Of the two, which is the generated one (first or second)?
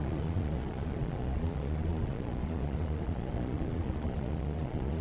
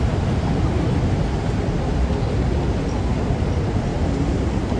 first